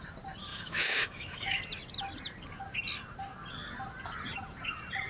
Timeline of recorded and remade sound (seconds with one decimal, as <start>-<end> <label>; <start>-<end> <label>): 0.0-0.5 recorded; 0.5-1.6 remade; 1.6-5.1 recorded